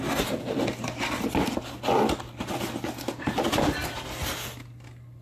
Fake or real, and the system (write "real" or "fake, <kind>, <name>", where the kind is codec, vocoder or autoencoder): real